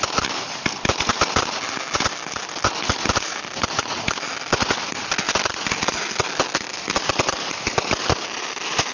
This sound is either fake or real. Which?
real